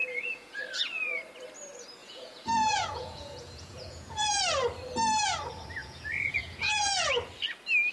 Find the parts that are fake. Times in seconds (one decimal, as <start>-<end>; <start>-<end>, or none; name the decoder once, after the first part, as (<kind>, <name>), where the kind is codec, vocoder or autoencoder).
0.0-0.6 (vocoder, Vocos); 2.0-4.4; 5.8-7.1